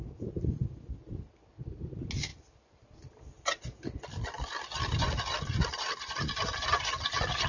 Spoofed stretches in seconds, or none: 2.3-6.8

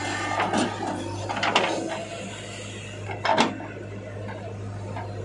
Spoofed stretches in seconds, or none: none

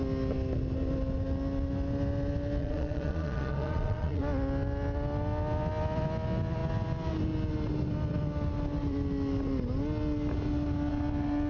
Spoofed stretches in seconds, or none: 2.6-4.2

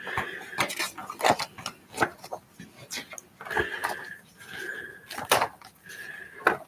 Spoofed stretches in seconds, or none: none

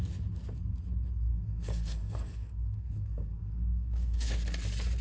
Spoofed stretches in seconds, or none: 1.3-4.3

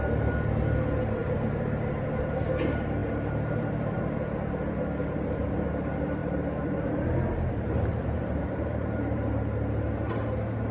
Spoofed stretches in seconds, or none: 1.2-2.5; 3.0-4.0; 6.2-9.7

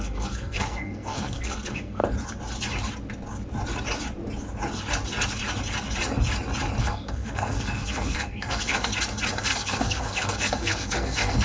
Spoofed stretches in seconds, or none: 0.0-2.0; 6.8-8.9; 9.4-11.4